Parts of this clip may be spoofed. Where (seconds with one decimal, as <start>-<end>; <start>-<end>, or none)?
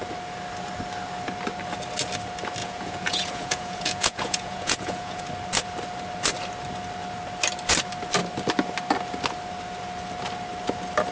2.6-5.3